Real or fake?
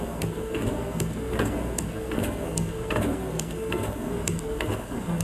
fake